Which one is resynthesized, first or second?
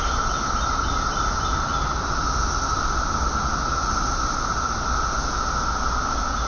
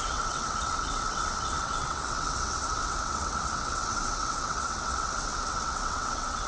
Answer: second